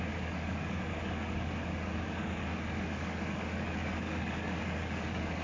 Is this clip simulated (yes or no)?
yes